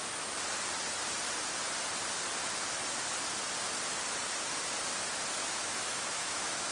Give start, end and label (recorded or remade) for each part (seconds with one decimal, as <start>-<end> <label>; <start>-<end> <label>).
0.0-5.4 recorded; 5.4-6.7 remade